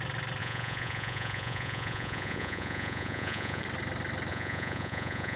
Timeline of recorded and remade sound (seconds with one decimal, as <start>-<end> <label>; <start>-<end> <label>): 0.0-0.4 recorded; 0.4-3.6 remade; 3.6-4.3 recorded; 4.3-5.4 remade